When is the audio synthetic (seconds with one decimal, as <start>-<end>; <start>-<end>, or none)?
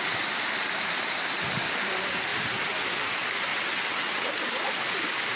3.5-4.3